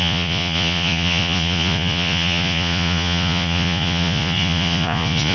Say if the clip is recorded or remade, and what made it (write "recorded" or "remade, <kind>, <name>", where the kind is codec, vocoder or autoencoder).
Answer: remade, vocoder, Vocos